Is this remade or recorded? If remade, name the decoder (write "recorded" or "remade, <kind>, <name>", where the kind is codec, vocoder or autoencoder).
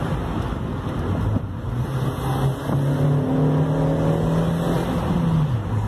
recorded